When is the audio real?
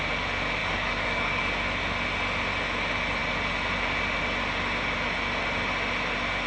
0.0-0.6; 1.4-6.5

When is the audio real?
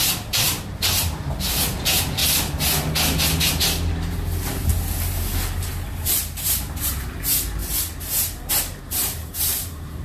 2.2-3.5; 4.7-5.9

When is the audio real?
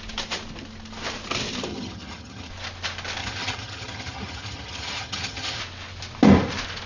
0.0-1.7; 2.5-3.2; 5.6-6.9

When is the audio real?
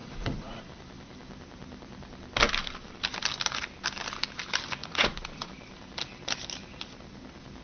0.6-4.8; 5.5-7.6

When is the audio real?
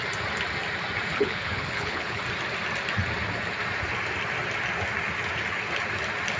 0.0-1.1; 2.2-6.4